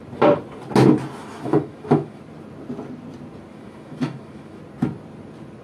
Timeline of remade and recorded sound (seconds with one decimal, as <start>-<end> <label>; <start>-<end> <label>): 0.0-1.2 recorded; 1.2-2.2 remade; 2.2-3.5 recorded; 3.5-4.6 remade; 4.6-5.6 recorded